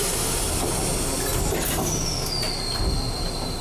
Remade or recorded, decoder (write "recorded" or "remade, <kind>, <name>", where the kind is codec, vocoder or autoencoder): recorded